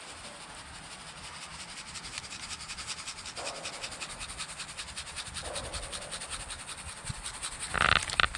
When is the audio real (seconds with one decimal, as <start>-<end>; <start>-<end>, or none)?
0.0-8.4